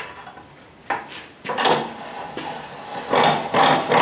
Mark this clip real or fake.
real